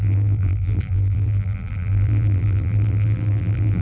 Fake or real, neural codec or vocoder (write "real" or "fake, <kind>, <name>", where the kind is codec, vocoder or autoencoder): fake, vocoder, BigVGAN v2